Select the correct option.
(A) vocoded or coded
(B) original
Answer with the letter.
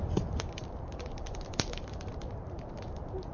A